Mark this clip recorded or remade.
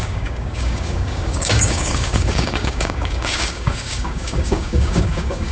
remade